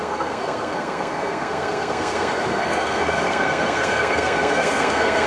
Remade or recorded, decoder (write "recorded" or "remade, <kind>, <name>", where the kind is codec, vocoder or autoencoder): remade, codec, SNAC